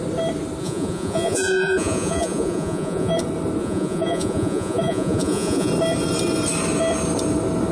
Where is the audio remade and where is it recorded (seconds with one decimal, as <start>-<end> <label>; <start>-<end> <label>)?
0.0-0.6 recorded; 0.6-3.1 remade; 3.1-3.6 recorded; 3.6-5.7 remade; 5.7-7.7 recorded